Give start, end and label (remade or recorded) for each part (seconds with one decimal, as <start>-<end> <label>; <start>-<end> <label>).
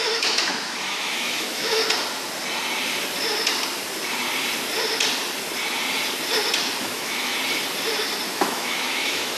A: 0.0-1.8 remade; 1.8-6.8 recorded; 6.8-7.3 remade; 7.3-8.3 recorded; 8.3-9.4 remade